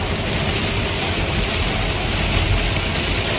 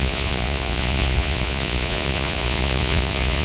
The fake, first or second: second